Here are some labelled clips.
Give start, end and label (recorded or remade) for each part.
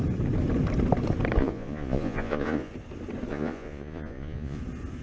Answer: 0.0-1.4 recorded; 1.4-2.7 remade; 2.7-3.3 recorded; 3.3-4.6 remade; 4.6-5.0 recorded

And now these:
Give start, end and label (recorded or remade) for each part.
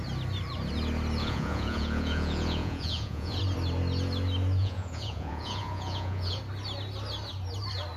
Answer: 0.0-1.2 recorded; 1.2-3.4 remade; 3.4-4.6 recorded; 4.6-6.4 remade; 6.4-8.0 recorded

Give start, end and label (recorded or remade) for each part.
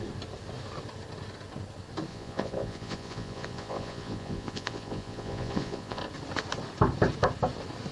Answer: 0.0-2.1 recorded; 2.1-6.0 remade; 6.0-7.9 recorded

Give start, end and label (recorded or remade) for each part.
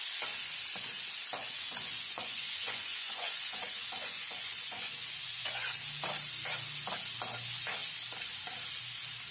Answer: 0.0-1.4 recorded; 1.4-5.8 remade; 5.8-9.3 recorded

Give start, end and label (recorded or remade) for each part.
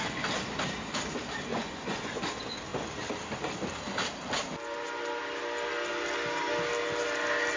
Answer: 0.0-1.5 recorded; 1.5-2.2 remade; 2.2-7.6 recorded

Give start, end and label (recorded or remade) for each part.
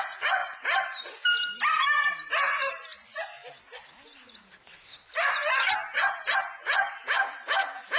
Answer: 0.0-8.0 recorded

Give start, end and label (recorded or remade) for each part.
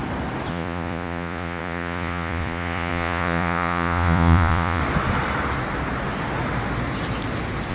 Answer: 0.0-0.5 recorded; 0.5-4.8 remade; 4.8-7.7 recorded